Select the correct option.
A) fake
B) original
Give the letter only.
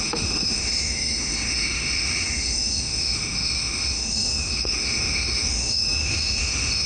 A